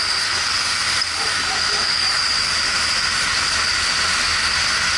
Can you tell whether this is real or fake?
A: real